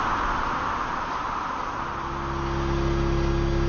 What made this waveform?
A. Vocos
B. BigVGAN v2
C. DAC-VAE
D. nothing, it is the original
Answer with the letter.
D